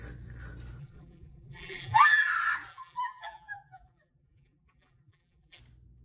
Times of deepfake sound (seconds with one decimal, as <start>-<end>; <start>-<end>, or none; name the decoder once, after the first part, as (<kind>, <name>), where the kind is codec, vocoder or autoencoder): 0.8-2.3 (vocoder, BigVGAN v2); 2.7-5.6